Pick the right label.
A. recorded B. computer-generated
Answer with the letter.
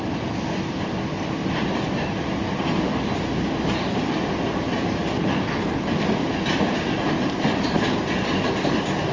A